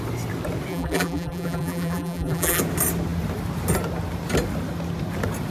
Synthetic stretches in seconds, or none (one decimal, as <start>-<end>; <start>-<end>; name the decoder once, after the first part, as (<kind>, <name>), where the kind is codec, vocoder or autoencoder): 0.7-2.6 (vocoder, BigVGAN v2)

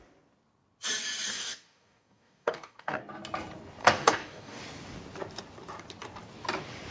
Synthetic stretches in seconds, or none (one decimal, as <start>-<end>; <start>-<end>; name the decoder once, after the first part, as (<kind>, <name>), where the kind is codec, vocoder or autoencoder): 1.3-3.0 (codec, DAC); 3.8-4.6

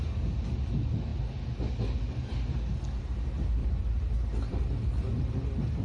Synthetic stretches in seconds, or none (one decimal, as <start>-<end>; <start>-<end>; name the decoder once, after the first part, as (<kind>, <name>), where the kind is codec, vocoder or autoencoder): 3.6-4.9 (vocoder, BigVGAN v2)

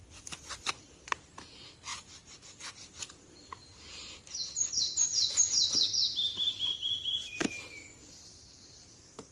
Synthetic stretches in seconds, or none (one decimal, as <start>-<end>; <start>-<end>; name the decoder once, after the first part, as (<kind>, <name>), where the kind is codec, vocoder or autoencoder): 1.9-3.0 (vocoder, BigVGAN v2); 4.4-5.7

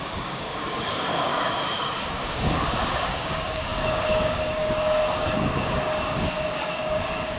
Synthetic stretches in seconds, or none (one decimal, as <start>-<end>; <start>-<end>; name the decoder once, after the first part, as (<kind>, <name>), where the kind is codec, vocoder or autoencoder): 0.0-1.3 (codec, DAC); 2.0-7.4